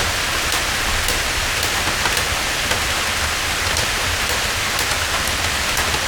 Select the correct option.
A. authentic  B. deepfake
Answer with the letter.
A